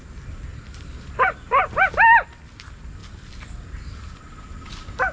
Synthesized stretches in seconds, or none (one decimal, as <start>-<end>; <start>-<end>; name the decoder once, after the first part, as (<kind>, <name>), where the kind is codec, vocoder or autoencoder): none